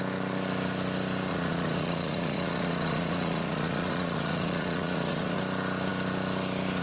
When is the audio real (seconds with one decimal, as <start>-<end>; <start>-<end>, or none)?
0.0-1.3; 5.4-6.8